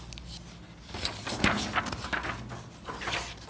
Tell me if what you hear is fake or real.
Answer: real